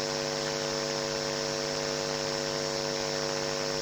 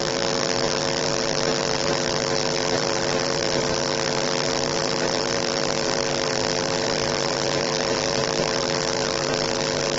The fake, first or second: second